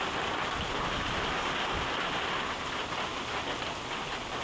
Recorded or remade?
recorded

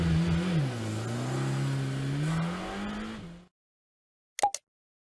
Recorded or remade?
recorded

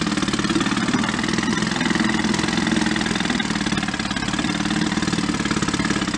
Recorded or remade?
recorded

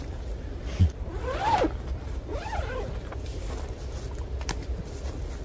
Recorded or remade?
recorded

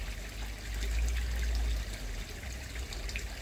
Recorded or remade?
recorded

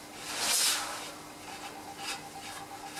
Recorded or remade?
recorded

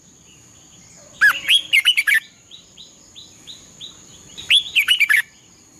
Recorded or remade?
remade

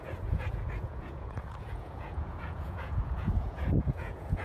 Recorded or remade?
remade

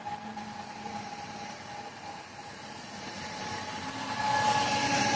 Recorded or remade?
recorded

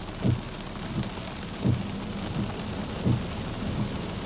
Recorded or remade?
recorded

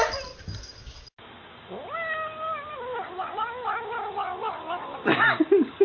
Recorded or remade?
recorded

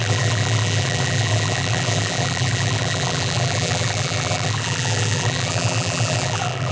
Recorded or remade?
remade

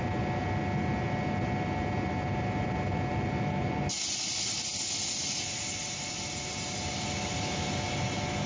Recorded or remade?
recorded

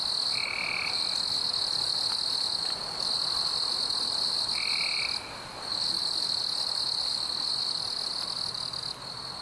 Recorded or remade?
recorded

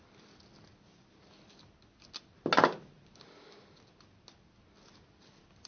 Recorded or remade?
recorded